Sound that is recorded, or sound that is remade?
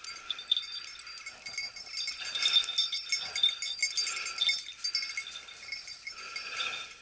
recorded